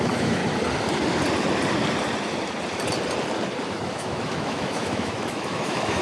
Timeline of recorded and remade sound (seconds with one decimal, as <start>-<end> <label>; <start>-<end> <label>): 0.0-0.4 remade; 0.4-3.7 recorded; 3.7-6.0 remade